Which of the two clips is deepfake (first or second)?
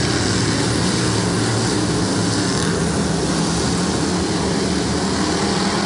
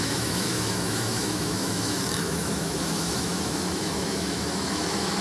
second